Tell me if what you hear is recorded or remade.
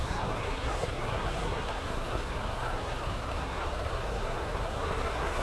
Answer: remade